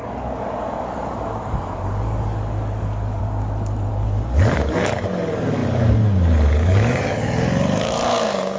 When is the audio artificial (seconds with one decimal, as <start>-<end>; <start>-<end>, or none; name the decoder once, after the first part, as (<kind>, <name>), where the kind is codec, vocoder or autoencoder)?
0.0-3.2 (codec, DAC); 3.9-8.6